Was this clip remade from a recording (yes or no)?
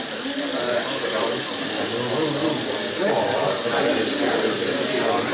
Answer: no